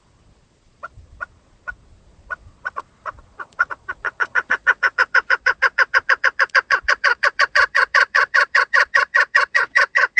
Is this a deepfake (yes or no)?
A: yes